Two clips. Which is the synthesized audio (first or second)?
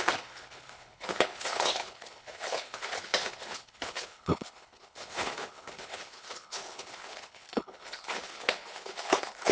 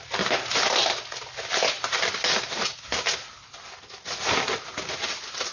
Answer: first